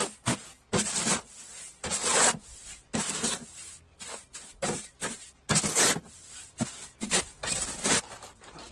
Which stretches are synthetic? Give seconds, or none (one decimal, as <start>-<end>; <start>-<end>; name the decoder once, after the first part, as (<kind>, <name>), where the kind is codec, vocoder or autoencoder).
none